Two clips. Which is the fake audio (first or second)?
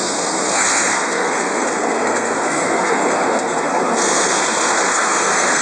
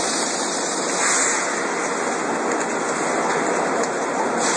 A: first